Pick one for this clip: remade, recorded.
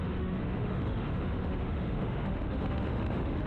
remade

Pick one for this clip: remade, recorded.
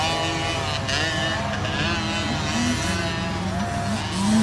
recorded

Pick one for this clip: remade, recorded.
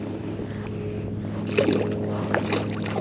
recorded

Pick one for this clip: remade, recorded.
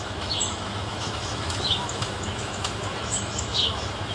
remade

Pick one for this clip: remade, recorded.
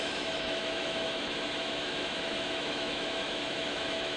remade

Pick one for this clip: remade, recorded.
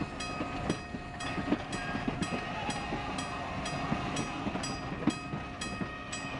recorded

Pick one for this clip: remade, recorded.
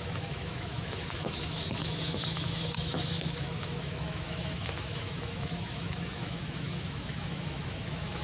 remade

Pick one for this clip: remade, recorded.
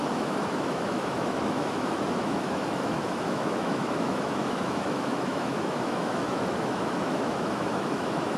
remade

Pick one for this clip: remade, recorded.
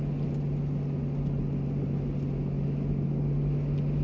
recorded